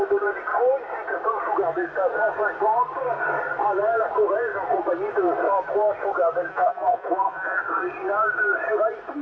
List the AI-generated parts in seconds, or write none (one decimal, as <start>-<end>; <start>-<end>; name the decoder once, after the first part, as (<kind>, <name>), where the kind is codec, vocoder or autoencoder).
6.5-7.6 (vocoder, Vocos)